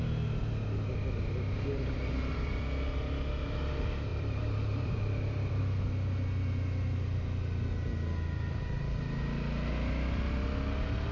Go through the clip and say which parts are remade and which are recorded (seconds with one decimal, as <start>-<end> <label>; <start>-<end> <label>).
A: 0.0-4.1 recorded; 4.1-5.6 remade; 5.6-11.1 recorded